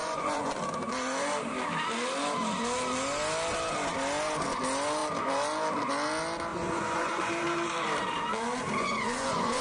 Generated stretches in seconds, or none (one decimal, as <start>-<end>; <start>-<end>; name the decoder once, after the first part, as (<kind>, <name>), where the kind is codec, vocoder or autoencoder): 0.0-0.5 (vocoder, Vocos); 6.5-7.3; 8.8-9.6

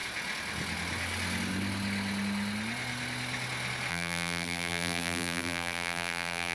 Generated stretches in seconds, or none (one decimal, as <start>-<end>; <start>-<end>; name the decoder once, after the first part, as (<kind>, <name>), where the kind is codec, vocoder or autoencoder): 3.9-6.5 (vocoder, BigVGAN v2)